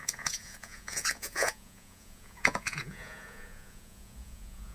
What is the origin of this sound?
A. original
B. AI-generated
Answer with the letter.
B